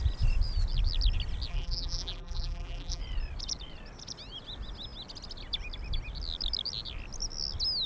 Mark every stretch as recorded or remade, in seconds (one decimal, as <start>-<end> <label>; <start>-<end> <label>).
0.0-1.5 recorded; 1.5-3.0 remade; 3.0-7.9 recorded